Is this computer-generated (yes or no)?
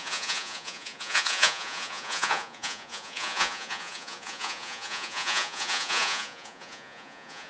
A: yes